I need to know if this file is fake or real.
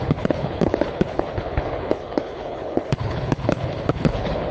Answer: fake